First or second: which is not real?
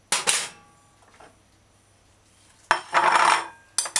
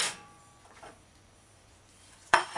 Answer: second